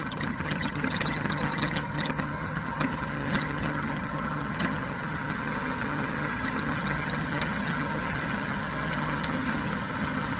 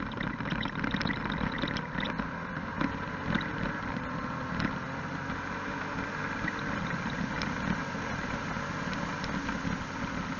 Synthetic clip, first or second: first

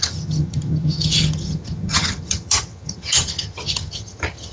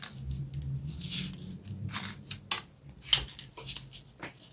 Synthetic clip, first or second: first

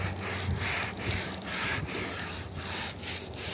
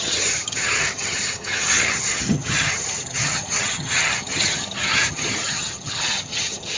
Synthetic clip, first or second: second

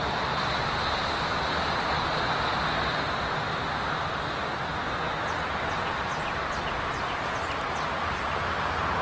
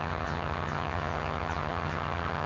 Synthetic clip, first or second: second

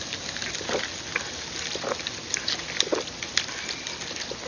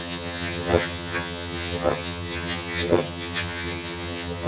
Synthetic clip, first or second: second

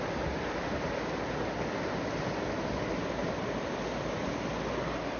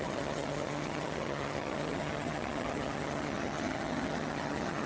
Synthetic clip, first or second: second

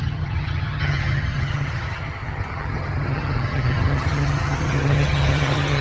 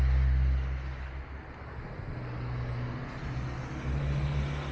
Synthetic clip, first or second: first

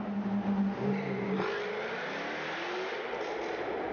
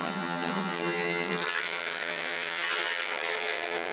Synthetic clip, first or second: second